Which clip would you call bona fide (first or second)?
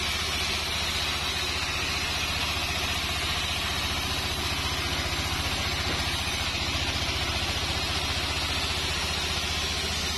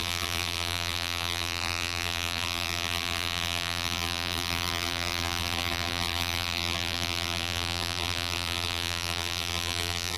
first